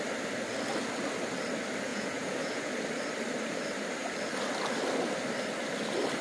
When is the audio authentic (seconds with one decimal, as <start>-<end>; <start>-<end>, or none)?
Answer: 0.0-1.9; 2.7-6.2